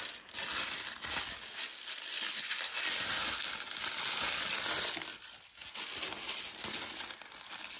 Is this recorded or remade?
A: recorded